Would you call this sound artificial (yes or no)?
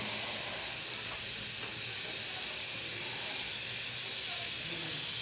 no